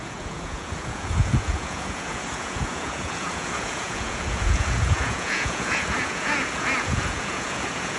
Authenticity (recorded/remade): remade